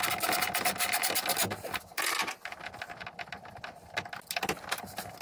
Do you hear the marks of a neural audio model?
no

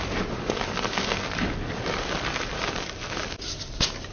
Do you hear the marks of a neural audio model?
no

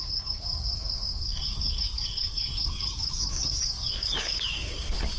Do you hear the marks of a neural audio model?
yes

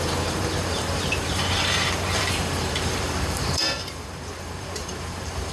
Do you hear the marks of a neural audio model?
yes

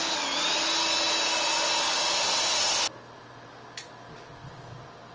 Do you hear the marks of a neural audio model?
no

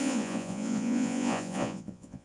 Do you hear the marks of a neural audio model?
yes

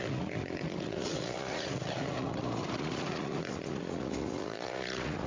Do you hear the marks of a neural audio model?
yes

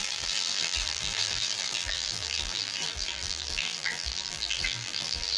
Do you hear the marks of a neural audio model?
yes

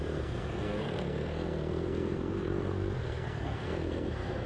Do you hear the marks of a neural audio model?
yes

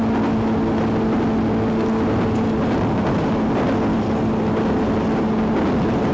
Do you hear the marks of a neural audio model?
no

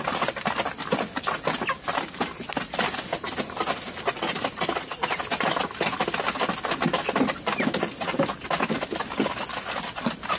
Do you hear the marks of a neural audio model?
no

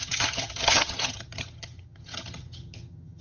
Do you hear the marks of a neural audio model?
yes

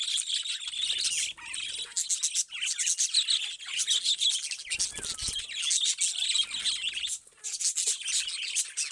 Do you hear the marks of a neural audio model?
no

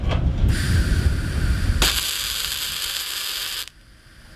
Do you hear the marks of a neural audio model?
no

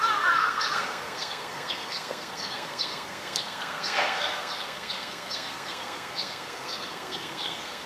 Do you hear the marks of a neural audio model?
yes